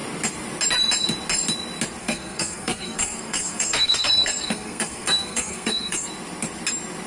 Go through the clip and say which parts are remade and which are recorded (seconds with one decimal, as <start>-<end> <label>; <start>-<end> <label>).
0.0-2.0 recorded; 2.0-6.1 remade; 6.1-7.1 recorded